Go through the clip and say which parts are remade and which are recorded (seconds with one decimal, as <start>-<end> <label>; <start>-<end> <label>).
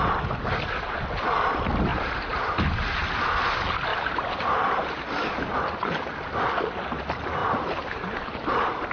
0.0-1.9 recorded; 1.9-2.5 remade; 2.5-3.9 recorded; 3.9-5.0 remade; 5.0-7.4 recorded; 7.4-8.5 remade; 8.5-8.9 recorded